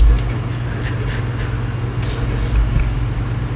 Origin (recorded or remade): recorded